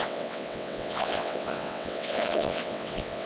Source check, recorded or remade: remade